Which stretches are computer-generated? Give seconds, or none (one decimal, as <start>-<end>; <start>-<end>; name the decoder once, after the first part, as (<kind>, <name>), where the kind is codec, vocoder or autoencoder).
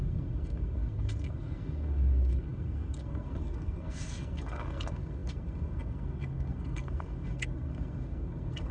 0.0-8.7 (codec, SNAC)